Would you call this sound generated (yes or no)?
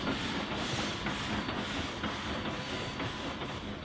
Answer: no